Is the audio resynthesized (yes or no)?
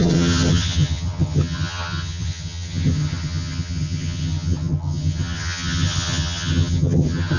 yes